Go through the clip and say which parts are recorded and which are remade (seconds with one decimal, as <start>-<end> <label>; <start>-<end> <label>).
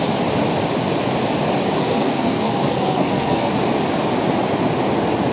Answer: 0.0-1.8 recorded; 1.8-3.5 remade; 3.5-5.3 recorded